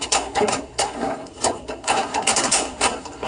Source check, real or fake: fake